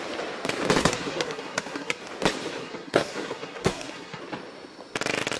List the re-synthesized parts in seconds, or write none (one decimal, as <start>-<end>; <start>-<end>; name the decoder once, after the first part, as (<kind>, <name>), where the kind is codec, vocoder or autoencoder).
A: 0.8-2.0 (codec, SNAC); 2.6-4.2